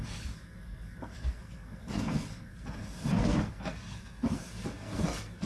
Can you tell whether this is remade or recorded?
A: remade